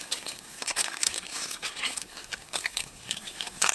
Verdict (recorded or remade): remade